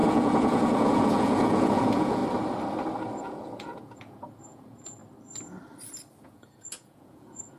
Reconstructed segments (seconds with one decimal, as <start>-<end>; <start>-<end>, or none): 0.0-2.2; 3.2-5.0; 6.2-7.6